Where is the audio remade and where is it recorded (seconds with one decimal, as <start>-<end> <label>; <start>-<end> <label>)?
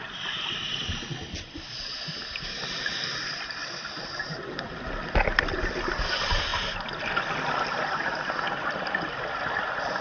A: 0.0-10.0 recorded